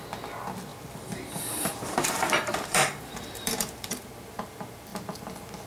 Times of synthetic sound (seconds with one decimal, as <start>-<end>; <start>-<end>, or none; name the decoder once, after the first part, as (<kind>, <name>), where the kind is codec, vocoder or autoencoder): 0.7-4.1 (vocoder, BigVGAN v2)